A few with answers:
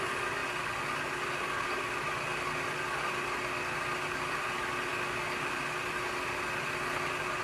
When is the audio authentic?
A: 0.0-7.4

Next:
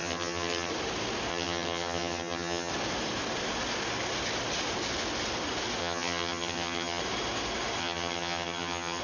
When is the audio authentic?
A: 0.7-1.3; 2.7-5.8; 7.0-7.8

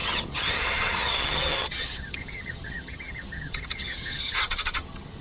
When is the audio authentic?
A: none

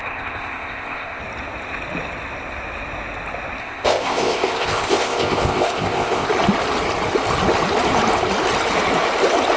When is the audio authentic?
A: 1.2-3.6; 6.3-9.6

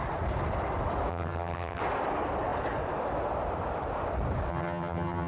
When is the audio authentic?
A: 0.0-1.1; 1.8-4.5

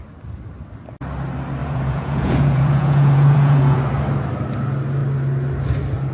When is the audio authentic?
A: 0.0-1.6; 3.8-6.1